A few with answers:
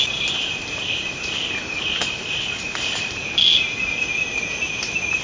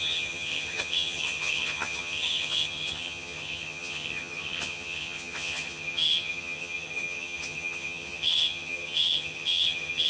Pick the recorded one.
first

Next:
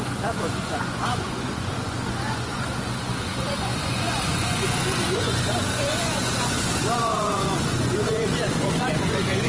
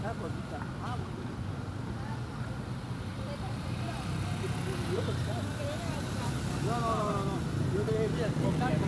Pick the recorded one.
second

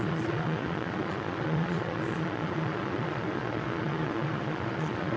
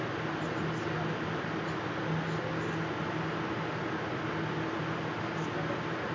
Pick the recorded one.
second